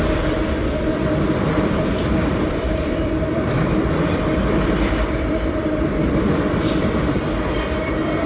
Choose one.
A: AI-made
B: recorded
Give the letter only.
A